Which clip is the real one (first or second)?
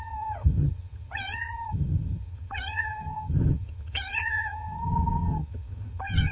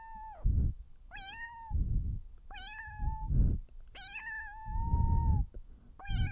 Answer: second